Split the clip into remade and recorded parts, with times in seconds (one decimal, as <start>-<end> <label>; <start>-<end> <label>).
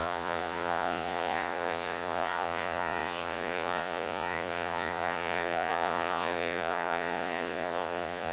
0.0-8.3 remade